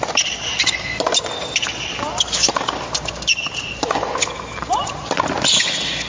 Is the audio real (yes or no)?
yes